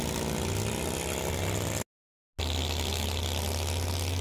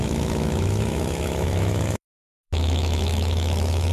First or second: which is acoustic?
first